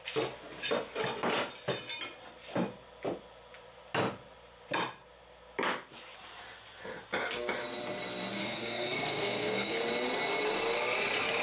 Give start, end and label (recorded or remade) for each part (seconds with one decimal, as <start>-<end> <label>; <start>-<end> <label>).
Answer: 0.0-8.4 recorded; 8.4-9.8 remade; 9.8-11.4 recorded